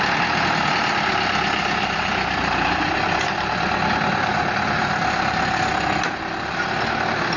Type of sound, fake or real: real